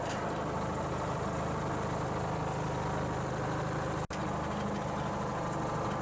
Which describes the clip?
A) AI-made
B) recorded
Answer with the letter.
B